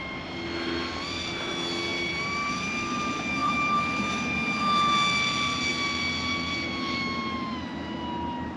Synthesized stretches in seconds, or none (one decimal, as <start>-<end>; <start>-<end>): 1.9-3.0; 3.4-4.6